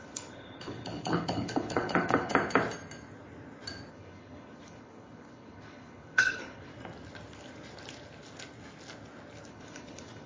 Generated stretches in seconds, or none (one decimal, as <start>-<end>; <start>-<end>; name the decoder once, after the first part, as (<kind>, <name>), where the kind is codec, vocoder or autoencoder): 0.0-2.3 (codec, HILCodec); 3.9-6.7; 9.5-10.3